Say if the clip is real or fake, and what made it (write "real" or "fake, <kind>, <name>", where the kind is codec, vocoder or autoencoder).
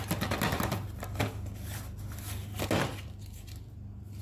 real